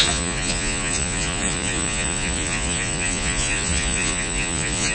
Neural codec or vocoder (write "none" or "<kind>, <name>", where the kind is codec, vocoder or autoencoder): vocoder, Vocos